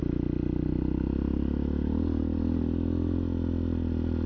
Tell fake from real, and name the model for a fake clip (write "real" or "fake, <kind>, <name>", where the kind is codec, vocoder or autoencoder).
real